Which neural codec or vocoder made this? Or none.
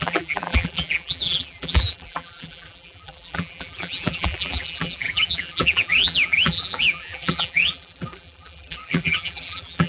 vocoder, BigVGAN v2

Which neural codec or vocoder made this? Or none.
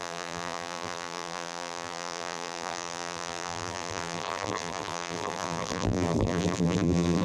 vocoder, BigVGAN v2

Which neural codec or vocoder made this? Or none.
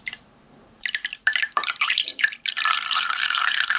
vocoder, BigVGAN v2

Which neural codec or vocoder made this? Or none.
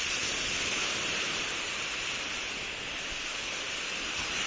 vocoder, BigVGAN v2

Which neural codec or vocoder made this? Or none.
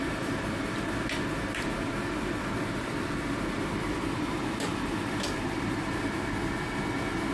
vocoder, BigVGAN v2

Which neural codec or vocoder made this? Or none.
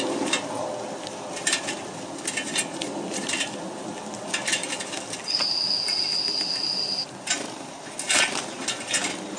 none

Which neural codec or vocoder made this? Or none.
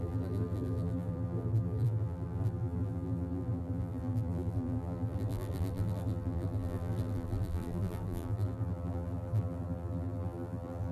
vocoder, BigVGAN v2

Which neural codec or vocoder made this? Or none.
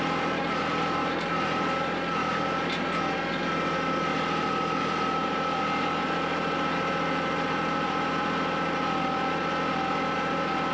none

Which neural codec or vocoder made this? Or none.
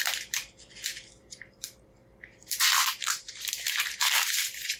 vocoder, BigVGAN v2